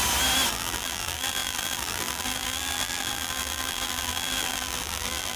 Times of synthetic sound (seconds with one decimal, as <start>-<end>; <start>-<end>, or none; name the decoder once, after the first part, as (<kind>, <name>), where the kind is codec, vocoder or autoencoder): 0.5-5.4 (vocoder, BigVGAN v2)